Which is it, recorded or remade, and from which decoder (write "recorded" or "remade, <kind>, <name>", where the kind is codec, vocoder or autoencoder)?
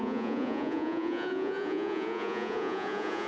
remade, vocoder, Vocos